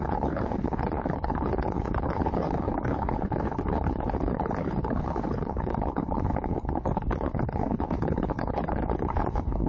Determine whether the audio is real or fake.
fake